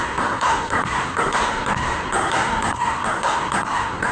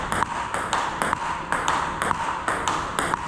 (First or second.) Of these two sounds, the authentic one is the second